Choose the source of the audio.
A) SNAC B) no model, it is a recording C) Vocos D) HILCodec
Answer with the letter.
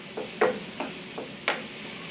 B